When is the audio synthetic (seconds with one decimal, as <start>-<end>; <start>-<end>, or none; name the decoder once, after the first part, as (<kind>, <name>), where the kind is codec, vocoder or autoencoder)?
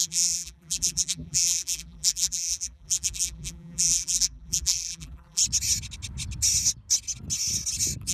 0.0-5.4 (vocoder, BigVGAN v2)